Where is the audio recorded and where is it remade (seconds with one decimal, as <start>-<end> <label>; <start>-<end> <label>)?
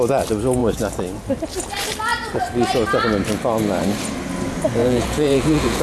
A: 0.0-4.8 recorded; 4.8-5.8 remade